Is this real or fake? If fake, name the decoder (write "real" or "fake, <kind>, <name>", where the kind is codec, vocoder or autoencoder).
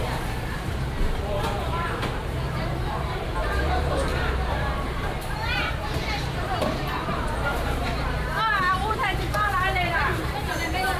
fake, vocoder, BigVGAN v2